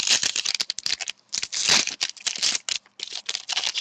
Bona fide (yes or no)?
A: yes